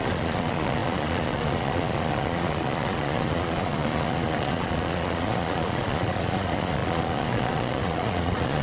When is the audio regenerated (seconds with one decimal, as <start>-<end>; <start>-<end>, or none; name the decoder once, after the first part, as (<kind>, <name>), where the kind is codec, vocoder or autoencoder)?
0.0-8.6 (vocoder, Vocos)